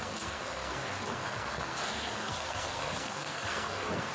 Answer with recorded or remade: remade